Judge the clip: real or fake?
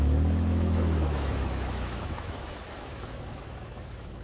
fake